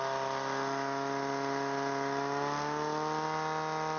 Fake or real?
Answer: real